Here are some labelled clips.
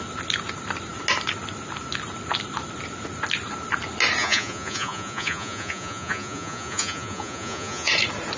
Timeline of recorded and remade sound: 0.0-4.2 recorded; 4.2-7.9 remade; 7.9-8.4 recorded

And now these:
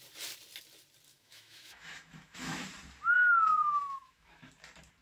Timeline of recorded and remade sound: 0.0-1.1 recorded; 1.1-2.6 remade; 2.6-3.6 recorded; 3.6-4.5 remade; 4.5-5.0 recorded